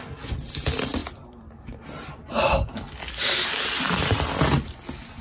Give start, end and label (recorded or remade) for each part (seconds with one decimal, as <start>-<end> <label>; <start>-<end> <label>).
0.0-5.2 recorded